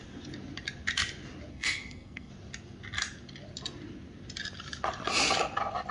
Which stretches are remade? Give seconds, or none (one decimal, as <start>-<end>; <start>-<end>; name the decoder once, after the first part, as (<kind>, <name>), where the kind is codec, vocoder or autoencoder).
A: 1.5-2.3 (codec, SNAC)